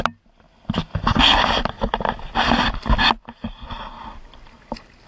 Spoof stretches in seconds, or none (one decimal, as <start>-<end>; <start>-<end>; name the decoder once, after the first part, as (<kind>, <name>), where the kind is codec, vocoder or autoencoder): none